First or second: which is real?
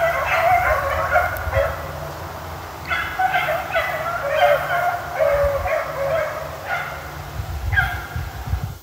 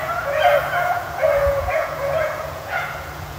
first